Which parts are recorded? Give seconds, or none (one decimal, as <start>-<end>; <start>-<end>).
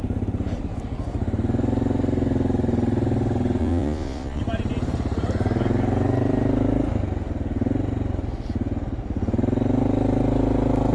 0.0-3.6; 4.4-10.9